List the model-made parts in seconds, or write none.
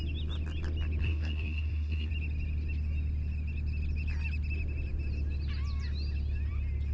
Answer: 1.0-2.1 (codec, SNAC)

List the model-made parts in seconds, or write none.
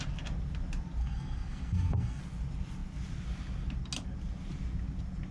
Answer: 1.0-2.2 (codec, SNAC)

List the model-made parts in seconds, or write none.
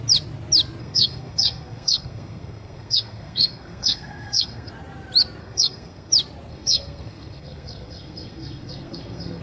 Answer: 0.8-4.7 (codec, SNAC); 5.4-6.1; 6.5-9.4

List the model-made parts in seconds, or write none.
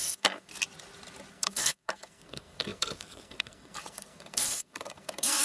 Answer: 0.0-0.5 (codec, SNAC); 1.3-5.4